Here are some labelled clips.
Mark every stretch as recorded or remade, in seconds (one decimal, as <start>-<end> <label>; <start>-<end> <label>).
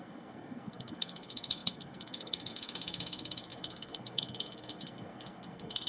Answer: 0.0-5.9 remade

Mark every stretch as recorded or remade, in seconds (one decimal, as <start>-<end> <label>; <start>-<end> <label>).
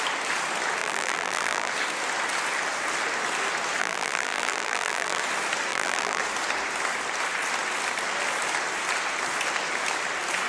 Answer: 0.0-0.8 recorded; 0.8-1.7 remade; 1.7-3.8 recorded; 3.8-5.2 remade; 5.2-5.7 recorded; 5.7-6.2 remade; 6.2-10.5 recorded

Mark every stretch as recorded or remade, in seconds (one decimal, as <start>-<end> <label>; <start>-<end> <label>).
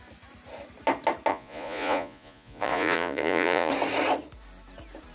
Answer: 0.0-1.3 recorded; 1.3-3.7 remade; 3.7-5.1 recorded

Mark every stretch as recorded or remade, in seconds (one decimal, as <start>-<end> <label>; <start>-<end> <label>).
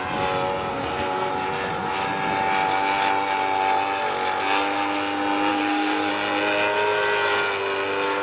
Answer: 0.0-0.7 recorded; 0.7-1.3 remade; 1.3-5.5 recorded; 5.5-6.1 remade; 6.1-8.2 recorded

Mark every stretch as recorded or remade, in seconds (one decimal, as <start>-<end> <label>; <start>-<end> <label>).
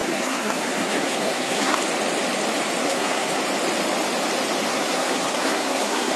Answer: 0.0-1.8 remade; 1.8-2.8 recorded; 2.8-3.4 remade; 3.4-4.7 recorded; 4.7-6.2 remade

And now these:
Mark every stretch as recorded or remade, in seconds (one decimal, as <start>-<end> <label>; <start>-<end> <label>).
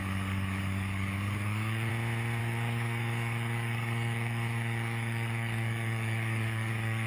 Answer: 0.0-1.9 remade; 1.9-2.4 recorded; 2.4-7.1 remade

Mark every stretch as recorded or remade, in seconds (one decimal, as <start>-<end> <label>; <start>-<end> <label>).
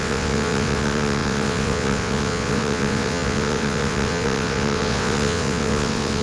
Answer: 0.0-6.2 remade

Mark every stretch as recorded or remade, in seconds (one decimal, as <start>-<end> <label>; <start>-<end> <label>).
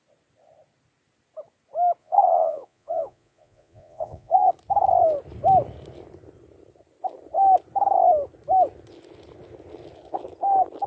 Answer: 0.0-2.0 recorded; 2.0-4.5 remade; 4.5-10.9 recorded